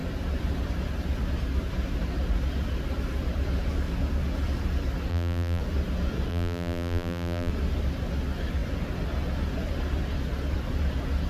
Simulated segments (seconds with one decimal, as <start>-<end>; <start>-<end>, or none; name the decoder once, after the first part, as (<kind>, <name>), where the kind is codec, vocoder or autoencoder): 5.1-5.6 (vocoder, BigVGAN v2); 6.3-7.5